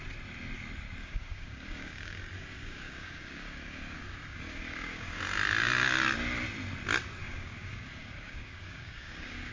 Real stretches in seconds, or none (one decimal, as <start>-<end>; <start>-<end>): 0.0-1.0; 5.2-7.2